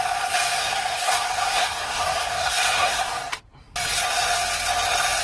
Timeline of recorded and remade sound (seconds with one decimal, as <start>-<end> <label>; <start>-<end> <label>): 0.0-0.6 recorded; 0.6-3.1 remade; 3.1-5.2 recorded